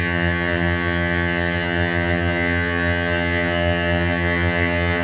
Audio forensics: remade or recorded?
remade